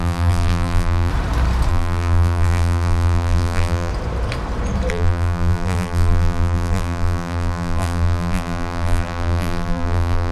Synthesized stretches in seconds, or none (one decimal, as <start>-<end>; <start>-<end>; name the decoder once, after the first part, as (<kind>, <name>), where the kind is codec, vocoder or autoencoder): 0.0-1.1 (vocoder, BigVGAN v2); 1.7-3.9; 4.9-10.3